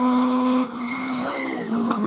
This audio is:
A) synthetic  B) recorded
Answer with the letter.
A